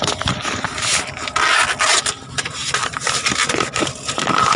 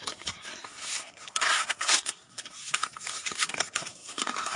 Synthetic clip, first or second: second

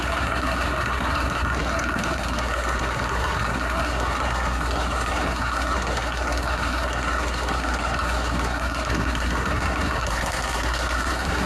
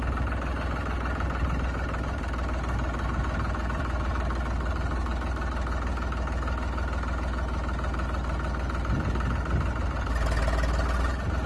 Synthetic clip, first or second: first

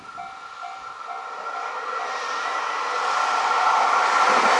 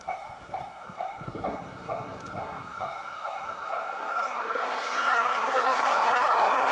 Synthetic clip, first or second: second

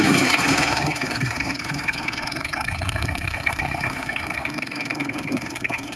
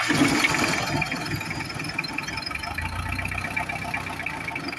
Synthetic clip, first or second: first